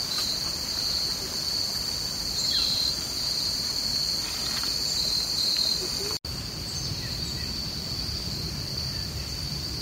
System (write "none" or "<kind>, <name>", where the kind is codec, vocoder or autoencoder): none